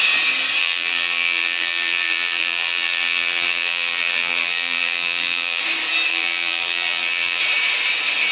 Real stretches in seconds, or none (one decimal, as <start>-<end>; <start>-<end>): 0.0-0.6; 5.6-6.1; 7.4-8.3